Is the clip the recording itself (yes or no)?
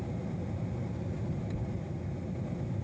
yes